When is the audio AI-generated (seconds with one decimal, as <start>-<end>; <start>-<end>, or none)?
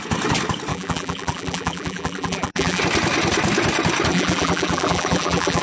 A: 0.7-2.8; 4.1-5.6